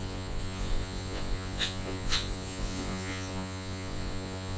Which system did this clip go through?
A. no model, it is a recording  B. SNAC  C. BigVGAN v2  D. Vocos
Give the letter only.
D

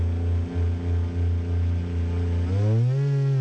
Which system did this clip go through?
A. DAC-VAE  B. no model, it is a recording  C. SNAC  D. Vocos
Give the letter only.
B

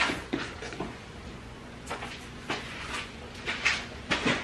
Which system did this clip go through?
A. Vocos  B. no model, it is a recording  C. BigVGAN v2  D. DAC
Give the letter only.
A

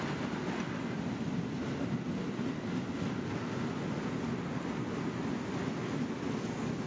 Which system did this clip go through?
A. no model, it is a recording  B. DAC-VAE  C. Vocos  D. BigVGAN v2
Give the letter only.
A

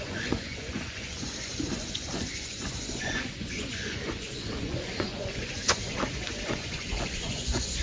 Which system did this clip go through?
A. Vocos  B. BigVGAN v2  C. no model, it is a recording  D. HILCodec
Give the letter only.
A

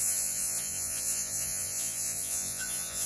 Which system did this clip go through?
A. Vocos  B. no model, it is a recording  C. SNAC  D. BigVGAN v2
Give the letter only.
A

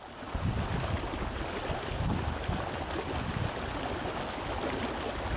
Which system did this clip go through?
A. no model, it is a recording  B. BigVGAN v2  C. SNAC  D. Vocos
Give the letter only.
A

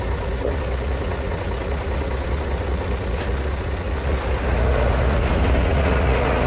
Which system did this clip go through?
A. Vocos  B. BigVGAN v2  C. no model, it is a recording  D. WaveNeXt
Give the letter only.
A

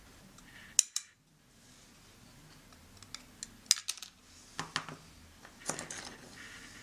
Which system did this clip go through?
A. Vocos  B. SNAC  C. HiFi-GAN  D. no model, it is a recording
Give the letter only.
D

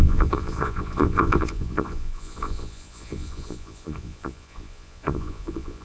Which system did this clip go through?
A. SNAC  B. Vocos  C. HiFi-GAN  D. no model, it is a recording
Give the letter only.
B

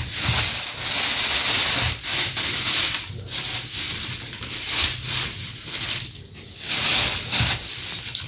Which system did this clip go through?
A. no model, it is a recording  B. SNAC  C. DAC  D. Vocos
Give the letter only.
A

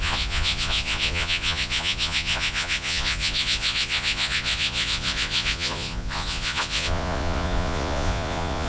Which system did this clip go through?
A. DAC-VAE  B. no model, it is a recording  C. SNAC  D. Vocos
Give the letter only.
D